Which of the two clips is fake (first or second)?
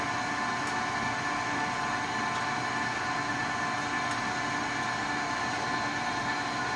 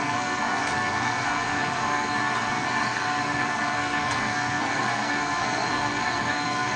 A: second